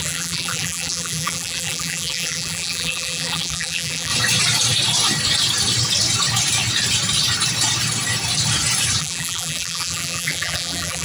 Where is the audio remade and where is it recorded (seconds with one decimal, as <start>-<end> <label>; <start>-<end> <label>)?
0.0-4.1 remade; 4.1-9.0 recorded; 9.0-11.0 remade